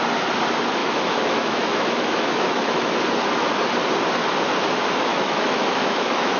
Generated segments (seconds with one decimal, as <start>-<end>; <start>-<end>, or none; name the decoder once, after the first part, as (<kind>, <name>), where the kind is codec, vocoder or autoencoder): 0.8-2.9 (autoencoder, DAC-VAE); 5.1-6.4